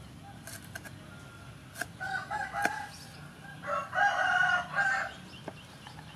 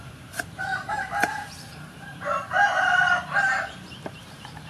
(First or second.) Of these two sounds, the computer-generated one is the second